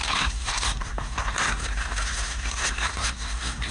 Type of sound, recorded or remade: remade